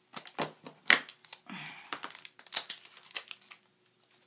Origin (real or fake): real